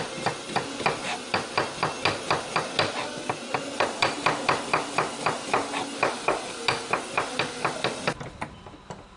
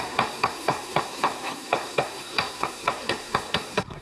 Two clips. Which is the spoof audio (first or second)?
second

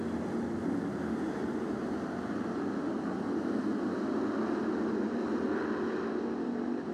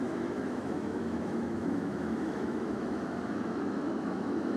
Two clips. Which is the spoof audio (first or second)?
second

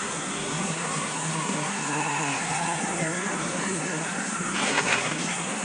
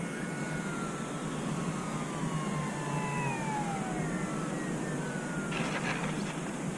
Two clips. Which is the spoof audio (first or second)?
first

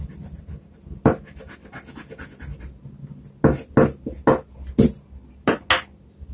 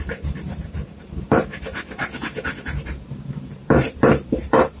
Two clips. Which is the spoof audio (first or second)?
second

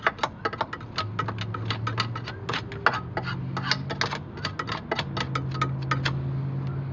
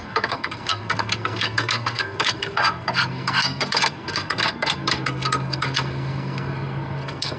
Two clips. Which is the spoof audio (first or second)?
second